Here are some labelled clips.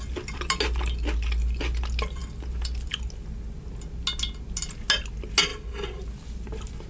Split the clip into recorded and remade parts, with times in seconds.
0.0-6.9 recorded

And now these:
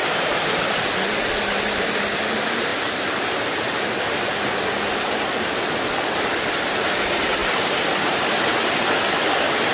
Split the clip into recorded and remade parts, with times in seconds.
0.0-0.5 remade; 0.5-2.7 recorded; 2.7-3.8 remade; 3.8-9.7 recorded

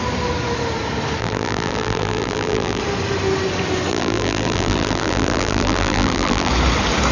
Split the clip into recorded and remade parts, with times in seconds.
0.0-1.2 recorded; 1.2-2.8 remade; 2.8-3.9 recorded; 3.9-6.5 remade; 6.5-7.1 recorded

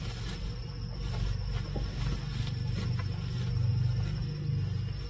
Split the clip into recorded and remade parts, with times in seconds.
0.0-5.1 recorded

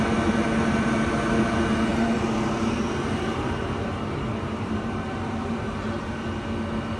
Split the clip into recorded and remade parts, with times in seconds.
0.0-1.9 recorded; 1.9-6.1 remade; 6.1-7.0 recorded